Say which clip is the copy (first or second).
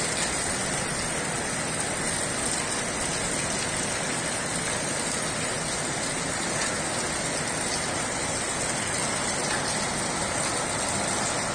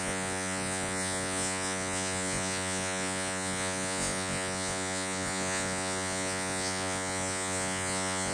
second